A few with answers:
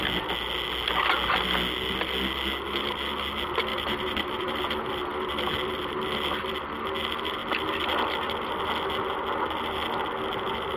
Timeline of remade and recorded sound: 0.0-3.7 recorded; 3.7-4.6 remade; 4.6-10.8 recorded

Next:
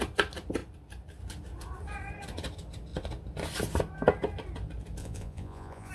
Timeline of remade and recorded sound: 0.0-5.0 recorded; 5.0-5.9 remade

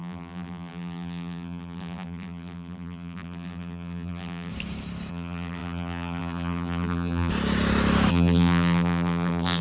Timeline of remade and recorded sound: 0.0-4.5 remade; 4.5-5.1 recorded; 5.1-7.3 remade; 7.3-8.1 recorded; 8.1-9.6 remade

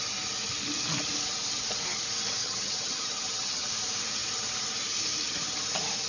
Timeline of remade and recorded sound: 0.0-2.4 recorded; 2.4-3.7 remade; 3.7-6.1 recorded

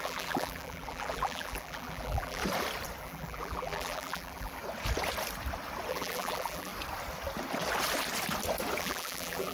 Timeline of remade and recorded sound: 0.0-2.4 remade; 2.4-3.0 recorded; 3.0-4.6 remade; 4.6-5.9 recorded; 5.9-6.7 remade; 6.7-8.8 recorded; 8.8-9.5 remade

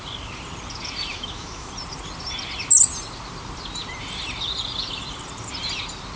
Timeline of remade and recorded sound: 0.0-1.1 recorded; 1.1-1.7 remade; 1.7-6.2 recorded

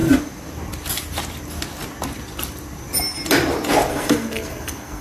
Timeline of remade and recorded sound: 0.0-3.9 recorded; 3.9-5.0 remade

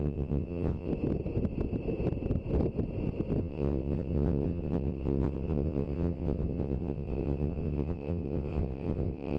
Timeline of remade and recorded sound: 0.0-0.9 remade; 0.9-3.4 recorded; 3.4-9.4 remade